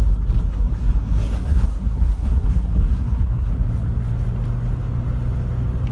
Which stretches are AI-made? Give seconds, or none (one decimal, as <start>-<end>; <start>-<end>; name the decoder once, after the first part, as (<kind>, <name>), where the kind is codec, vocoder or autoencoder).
0.5-3.5 (codec, SNAC)